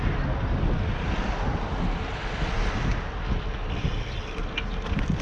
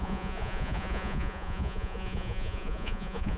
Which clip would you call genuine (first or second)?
first